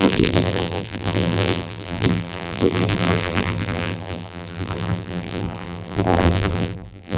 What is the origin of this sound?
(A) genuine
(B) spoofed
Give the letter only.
B